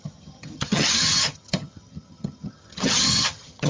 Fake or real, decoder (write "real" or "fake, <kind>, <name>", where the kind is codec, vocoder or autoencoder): fake, vocoder, HiFi-GAN